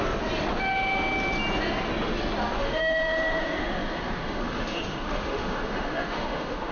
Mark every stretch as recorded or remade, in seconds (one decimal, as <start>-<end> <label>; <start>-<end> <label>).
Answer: 0.0-2.6 recorded; 2.6-6.7 remade